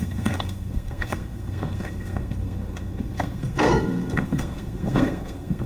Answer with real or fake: fake